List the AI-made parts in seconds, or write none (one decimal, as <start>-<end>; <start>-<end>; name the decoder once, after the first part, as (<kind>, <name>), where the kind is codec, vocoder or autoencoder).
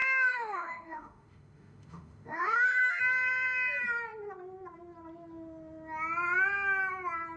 0.0-3.0 (autoencoder, DAC-VAE)